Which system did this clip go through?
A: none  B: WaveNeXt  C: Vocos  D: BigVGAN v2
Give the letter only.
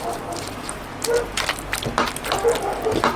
A